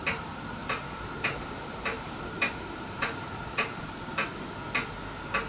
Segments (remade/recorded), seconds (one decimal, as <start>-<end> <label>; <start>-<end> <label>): 0.0-0.6 recorded; 0.6-3.9 remade; 3.9-5.5 recorded